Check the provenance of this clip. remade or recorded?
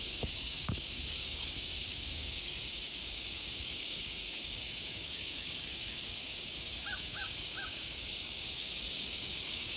remade